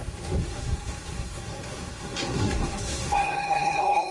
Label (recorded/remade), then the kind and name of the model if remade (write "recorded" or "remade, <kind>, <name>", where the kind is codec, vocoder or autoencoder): remade, codec, SNAC